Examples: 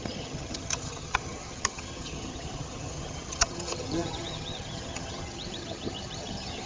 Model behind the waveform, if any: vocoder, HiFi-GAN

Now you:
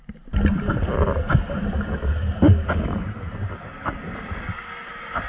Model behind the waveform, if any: none